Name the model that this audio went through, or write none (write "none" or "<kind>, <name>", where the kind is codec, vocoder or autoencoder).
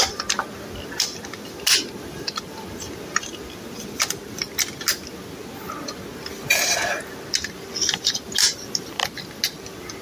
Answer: none